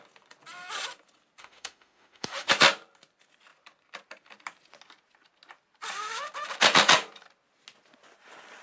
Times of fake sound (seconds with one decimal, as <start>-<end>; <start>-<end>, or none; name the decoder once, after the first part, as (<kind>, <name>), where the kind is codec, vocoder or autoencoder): 1.4-2.5 (autoencoder, DAC-VAE)

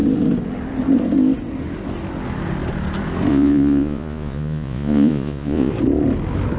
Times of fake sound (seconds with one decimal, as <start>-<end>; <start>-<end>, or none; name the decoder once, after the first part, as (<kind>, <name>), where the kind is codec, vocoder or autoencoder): 3.3-5.7 (vocoder, Vocos)

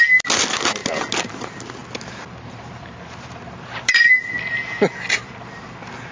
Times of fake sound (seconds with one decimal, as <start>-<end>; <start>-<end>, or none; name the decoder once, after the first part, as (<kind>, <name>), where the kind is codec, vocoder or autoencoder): none

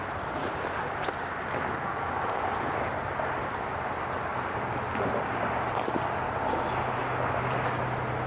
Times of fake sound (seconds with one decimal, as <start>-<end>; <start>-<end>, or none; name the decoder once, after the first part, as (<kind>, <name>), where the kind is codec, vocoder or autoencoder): none

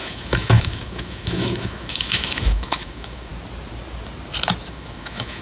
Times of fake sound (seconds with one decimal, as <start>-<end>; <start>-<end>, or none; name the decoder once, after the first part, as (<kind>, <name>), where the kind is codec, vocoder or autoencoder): 0.0-3.3 (autoencoder, DAC-VAE); 4.7-5.4